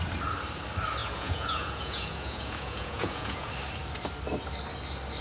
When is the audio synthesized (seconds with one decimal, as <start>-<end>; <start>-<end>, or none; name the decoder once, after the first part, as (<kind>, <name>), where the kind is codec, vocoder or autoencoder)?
1.0-3.5 (vocoder, Vocos)